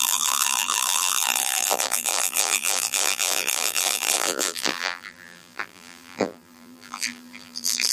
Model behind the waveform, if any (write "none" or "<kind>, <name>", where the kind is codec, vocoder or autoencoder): vocoder, BigVGAN v2